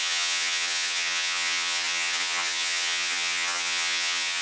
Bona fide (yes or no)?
no